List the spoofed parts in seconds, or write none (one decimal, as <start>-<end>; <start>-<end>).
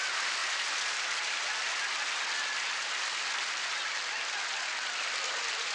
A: none